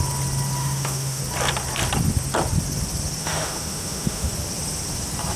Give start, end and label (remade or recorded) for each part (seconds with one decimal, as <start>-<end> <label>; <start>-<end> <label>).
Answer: 0.0-0.6 recorded; 0.6-1.2 remade; 1.2-3.2 recorded; 3.2-4.3 remade; 4.3-5.4 recorded